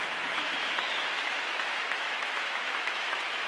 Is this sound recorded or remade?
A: remade